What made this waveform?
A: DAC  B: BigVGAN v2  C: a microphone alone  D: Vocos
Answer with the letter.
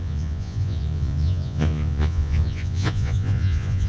D